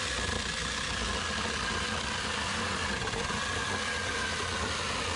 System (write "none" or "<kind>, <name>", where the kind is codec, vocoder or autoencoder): none